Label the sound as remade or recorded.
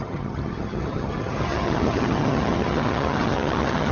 remade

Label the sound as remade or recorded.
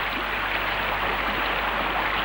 recorded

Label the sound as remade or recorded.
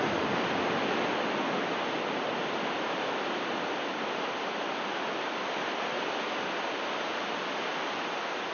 recorded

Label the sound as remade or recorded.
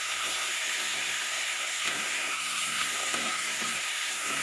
remade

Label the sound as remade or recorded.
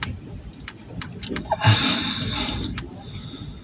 recorded